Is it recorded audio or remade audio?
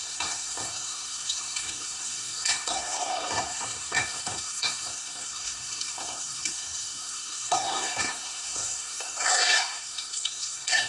remade